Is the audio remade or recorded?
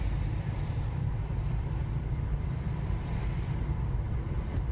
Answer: remade